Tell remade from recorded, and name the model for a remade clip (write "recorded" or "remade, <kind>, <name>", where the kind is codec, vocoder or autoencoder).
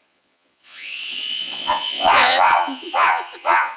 remade, vocoder, Vocos